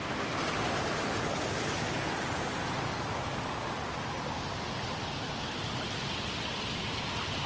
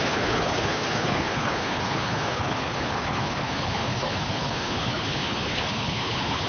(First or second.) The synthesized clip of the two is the second